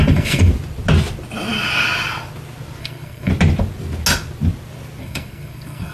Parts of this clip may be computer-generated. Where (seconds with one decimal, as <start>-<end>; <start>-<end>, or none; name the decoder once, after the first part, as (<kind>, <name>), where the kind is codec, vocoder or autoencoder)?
0.0-0.5 (codec, SNAC); 2.8-3.3; 5.0-5.9